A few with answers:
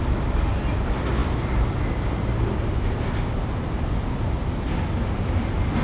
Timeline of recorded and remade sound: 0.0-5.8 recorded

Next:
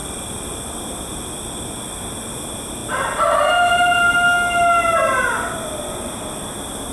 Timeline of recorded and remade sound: 0.0-0.8 remade; 0.8-6.9 recorded

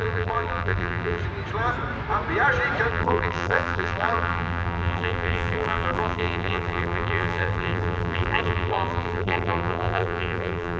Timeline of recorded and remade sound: 0.0-1.2 remade; 1.2-2.9 recorded; 2.9-10.8 remade